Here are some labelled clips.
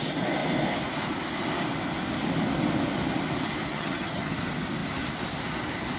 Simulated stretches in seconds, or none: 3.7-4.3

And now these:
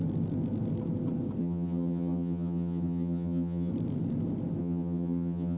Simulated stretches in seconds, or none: 1.4-3.7; 4.6-5.6

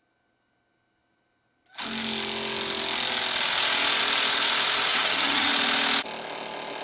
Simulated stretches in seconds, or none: 4.9-5.5

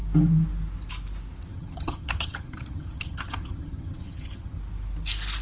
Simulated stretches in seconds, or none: 1.5-4.6

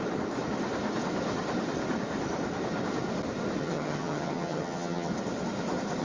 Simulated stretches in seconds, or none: 3.6-5.1

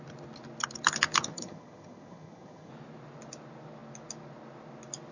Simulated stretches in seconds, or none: 1.3-2.7

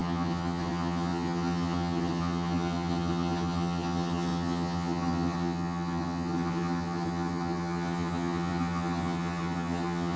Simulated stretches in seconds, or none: 0.0-10.2